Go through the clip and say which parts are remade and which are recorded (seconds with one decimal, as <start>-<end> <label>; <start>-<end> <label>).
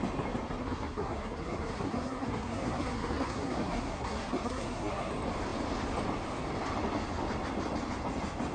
0.0-0.6 recorded; 0.6-5.1 remade; 5.1-8.5 recorded